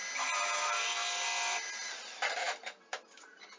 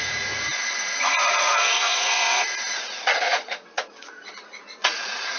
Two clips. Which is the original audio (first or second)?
first